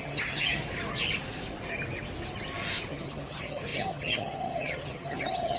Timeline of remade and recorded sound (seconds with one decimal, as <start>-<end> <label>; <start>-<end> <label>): 0.0-0.6 remade; 0.6-2.9 recorded; 2.9-5.6 remade